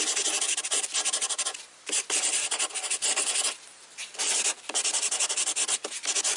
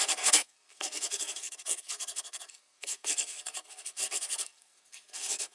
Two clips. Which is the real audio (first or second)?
first